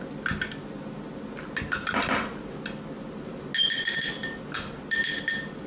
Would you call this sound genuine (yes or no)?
yes